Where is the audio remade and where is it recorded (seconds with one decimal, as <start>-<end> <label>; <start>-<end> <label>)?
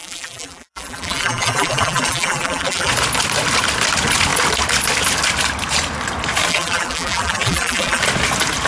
0.0-2.9 remade; 2.9-6.5 recorded; 6.5-8.0 remade; 8.0-8.7 recorded